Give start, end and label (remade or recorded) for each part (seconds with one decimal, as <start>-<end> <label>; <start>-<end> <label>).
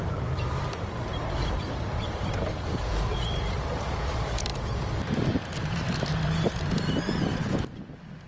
0.0-4.5 remade; 4.5-5.6 recorded; 5.6-8.3 remade